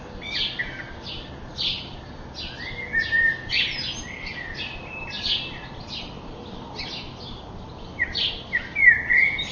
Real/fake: real